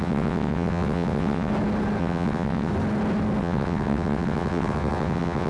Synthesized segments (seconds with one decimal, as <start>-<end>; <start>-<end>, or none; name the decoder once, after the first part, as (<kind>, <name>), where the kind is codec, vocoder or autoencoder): 0.0-1.5 (vocoder, WaveNeXt); 2.0-2.7; 3.4-5.5